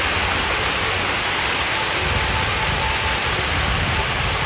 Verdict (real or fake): real